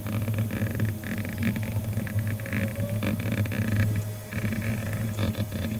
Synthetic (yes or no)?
no